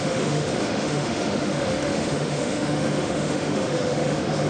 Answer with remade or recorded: remade